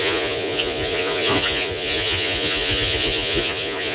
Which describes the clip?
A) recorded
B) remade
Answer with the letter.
B